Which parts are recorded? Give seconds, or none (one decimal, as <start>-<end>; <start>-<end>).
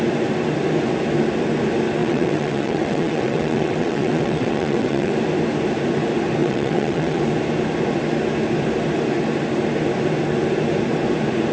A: 0.0-2.0; 5.1-6.4; 7.2-11.5